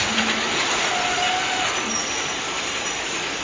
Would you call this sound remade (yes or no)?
no